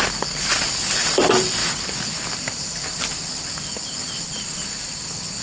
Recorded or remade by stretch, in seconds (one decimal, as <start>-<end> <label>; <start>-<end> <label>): 0.0-1.6 recorded; 1.6-4.6 remade; 4.6-5.4 recorded